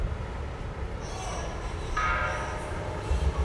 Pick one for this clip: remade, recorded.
remade